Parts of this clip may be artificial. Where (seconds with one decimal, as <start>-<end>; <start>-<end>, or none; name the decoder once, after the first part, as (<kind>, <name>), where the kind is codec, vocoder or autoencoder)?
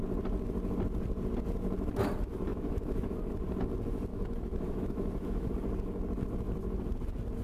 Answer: 2.5-3.1 (autoencoder, DAC-VAE); 4.1-5.5